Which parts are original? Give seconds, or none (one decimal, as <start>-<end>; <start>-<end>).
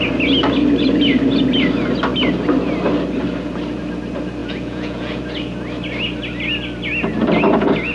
0.0-4.4; 5.2-7.9